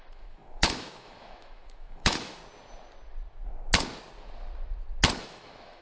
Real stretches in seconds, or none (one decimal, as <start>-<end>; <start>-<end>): 2.4-5.2